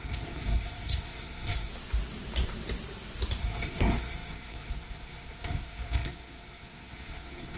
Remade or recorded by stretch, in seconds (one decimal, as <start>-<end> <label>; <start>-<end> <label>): 0.0-1.7 remade; 1.7-3.4 recorded; 3.4-7.6 remade